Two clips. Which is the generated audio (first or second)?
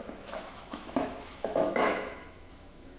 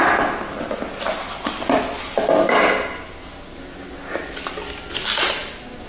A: first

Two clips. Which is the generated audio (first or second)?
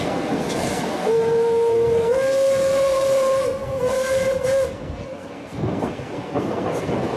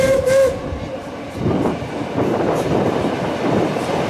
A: first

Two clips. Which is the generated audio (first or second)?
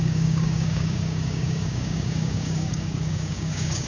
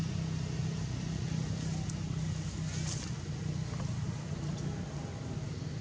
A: first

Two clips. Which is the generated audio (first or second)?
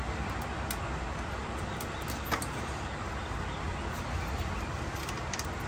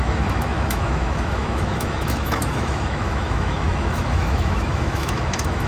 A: second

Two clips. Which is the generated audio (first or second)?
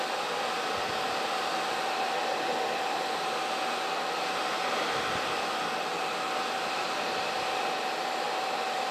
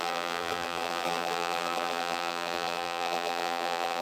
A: second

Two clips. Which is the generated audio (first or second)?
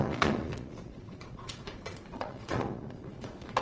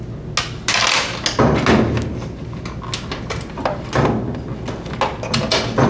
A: first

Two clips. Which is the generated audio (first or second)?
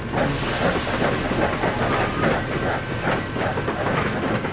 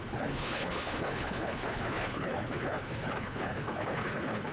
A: second